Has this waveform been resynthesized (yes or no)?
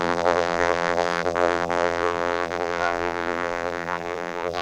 yes